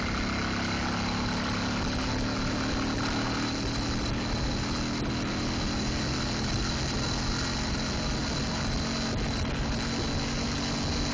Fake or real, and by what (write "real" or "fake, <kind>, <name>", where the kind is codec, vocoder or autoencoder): real